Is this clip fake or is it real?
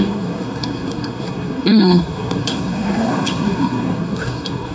fake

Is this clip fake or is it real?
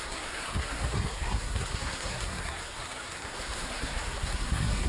fake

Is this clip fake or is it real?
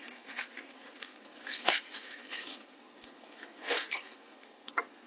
fake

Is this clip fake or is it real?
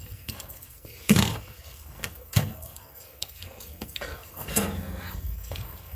fake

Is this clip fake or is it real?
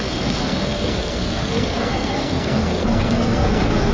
fake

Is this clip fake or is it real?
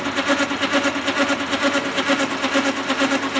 real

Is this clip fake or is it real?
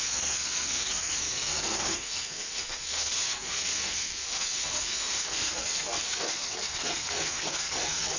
fake